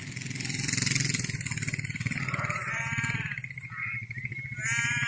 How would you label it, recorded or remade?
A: recorded